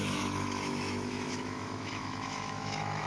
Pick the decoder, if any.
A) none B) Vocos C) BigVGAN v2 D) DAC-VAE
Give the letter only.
D